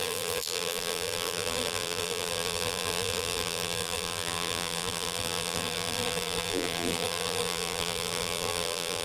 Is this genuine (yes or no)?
no